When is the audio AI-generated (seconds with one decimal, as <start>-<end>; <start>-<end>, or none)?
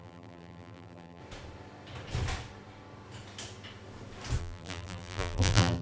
0.0-1.2; 4.4-5.8